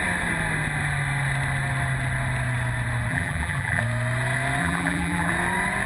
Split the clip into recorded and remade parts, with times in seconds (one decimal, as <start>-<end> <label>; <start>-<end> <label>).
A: 0.0-3.1 recorded; 3.1-3.8 remade; 3.8-4.6 recorded; 4.6-5.3 remade; 5.3-5.9 recorded